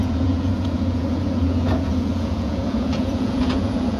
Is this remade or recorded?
remade